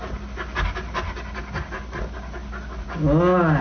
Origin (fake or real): real